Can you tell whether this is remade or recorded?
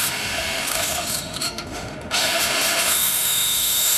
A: remade